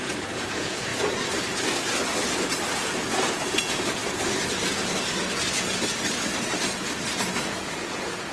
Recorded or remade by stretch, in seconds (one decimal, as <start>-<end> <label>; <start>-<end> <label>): 0.0-0.9 remade; 0.9-2.7 recorded; 2.7-4.0 remade; 4.0-7.3 recorded; 7.3-8.3 remade